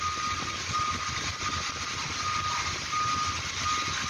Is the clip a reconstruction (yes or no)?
no